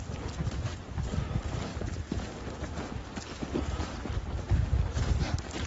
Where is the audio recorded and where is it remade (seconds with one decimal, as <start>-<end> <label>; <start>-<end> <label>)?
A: 0.0-5.7 recorded